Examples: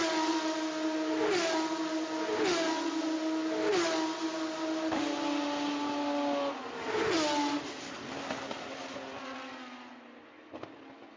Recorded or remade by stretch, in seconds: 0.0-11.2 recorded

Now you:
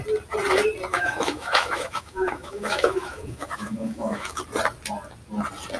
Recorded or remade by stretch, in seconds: 0.0-0.9 recorded; 0.9-4.4 remade; 4.4-5.8 recorded

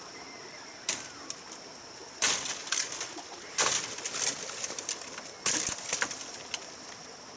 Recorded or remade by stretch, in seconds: 0.0-7.4 recorded

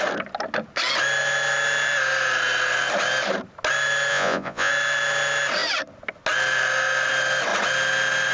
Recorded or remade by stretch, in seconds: 0.0-4.1 recorded; 4.1-4.7 remade; 4.7-8.3 recorded